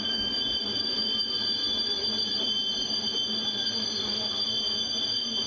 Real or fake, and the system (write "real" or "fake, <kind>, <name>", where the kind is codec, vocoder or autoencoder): real